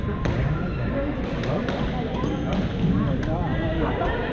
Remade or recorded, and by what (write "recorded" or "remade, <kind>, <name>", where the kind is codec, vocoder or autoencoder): recorded